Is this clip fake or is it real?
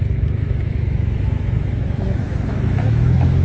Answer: fake